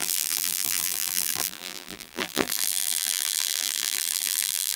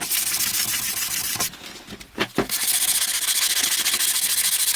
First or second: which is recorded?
second